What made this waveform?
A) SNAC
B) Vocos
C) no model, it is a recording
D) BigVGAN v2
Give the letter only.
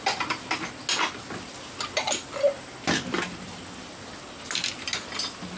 C